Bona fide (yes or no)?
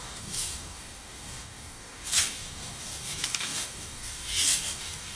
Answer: no